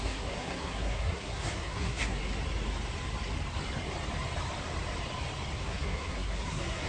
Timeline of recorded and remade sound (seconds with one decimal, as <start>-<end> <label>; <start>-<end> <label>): 0.0-2.2 remade; 2.2-5.6 recorded; 5.6-6.9 remade